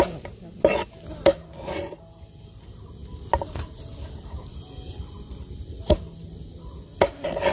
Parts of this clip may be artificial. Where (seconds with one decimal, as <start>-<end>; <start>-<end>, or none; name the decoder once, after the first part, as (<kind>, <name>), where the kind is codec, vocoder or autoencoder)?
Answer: none